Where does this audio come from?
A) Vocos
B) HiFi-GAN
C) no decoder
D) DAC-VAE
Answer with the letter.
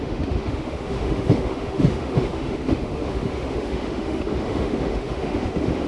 D